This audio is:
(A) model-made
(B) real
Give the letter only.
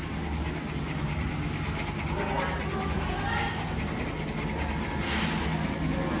B